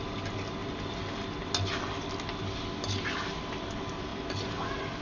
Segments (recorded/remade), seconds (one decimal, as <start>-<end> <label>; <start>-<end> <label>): 0.0-5.0 recorded